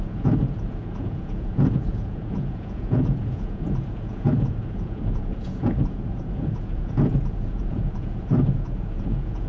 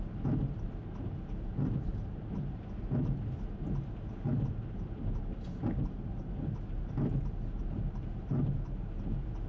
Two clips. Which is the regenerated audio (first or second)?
first